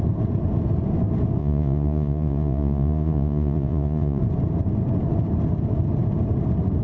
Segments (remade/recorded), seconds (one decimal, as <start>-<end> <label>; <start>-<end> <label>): 0.0-1.4 recorded; 1.4-4.2 remade; 4.2-6.8 recorded